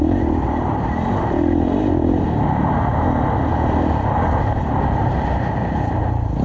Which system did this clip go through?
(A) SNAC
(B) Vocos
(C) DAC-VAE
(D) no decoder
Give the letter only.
D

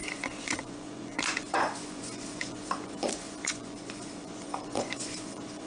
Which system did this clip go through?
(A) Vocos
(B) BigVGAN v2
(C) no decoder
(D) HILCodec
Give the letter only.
A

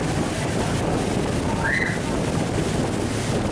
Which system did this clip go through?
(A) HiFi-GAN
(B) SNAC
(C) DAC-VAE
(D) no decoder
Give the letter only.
D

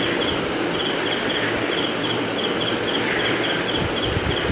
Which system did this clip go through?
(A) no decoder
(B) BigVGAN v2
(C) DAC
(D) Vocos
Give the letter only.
A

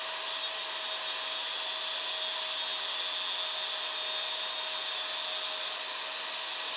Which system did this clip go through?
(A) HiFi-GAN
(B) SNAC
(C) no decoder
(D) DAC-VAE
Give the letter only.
C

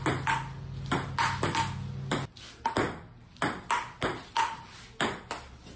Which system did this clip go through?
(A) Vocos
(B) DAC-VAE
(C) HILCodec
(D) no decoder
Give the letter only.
D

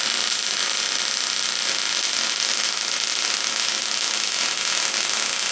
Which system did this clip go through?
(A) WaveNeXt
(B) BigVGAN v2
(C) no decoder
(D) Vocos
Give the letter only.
C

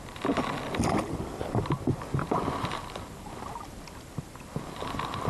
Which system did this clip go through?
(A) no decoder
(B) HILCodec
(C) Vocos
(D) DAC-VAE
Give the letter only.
A